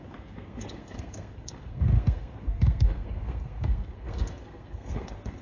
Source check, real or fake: fake